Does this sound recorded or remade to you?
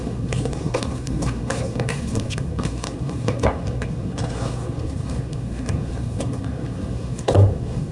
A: remade